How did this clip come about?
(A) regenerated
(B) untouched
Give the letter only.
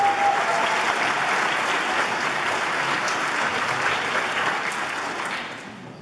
B